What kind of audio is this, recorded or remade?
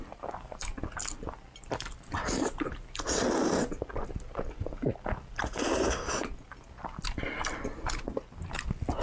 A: recorded